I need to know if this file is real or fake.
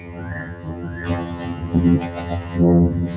fake